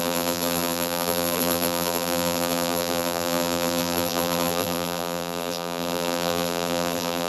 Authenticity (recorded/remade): remade